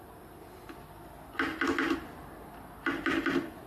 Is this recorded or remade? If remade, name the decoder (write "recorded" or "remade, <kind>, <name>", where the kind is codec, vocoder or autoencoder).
recorded